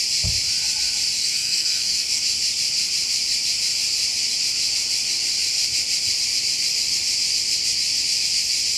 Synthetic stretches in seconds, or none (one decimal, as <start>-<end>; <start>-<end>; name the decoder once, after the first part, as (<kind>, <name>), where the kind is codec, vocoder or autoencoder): 1.2-2.2 (codec, SNAC)